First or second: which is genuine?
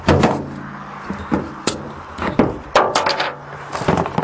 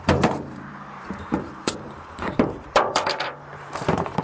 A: first